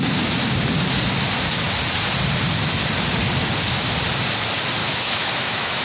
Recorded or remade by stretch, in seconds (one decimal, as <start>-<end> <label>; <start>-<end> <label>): 0.0-4.8 recorded; 4.8-5.8 remade